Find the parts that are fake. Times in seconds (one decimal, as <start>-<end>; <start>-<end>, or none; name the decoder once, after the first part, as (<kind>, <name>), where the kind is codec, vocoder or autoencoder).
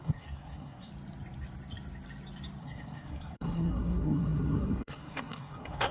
0.0-0.9 (codec, SNAC); 2.6-5.9